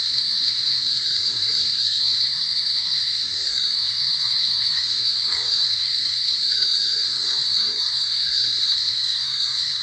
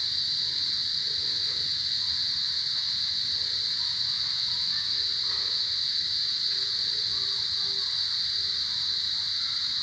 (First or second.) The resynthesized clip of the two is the first